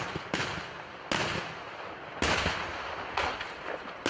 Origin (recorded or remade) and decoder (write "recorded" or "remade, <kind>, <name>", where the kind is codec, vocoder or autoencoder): recorded